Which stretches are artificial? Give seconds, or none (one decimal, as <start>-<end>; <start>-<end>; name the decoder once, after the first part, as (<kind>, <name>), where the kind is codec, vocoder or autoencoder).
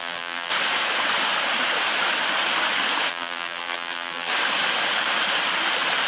0.0-0.5 (vocoder, BigVGAN v2); 3.1-4.3